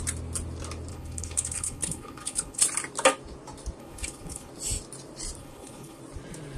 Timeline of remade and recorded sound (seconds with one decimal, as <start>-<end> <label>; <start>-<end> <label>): 0.0-0.9 recorded; 0.9-2.6 remade; 2.6-3.8 recorded; 3.8-4.5 remade; 4.5-5.4 recorded; 5.4-6.0 remade; 6.0-6.6 recorded